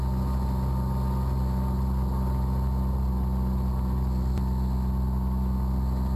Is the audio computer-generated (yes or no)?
no